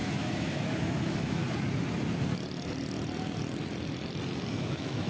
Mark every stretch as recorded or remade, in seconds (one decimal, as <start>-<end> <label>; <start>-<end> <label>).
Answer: 0.0-1.4 remade; 1.4-4.5 recorded; 4.5-5.1 remade